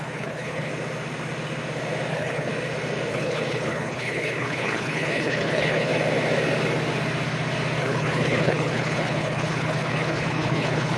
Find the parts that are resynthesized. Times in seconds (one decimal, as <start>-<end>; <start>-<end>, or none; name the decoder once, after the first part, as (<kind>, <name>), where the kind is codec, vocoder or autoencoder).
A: 0.0-0.7 (codec, HILCodec); 2.1-2.5; 3.1-5.9; 7.8-11.0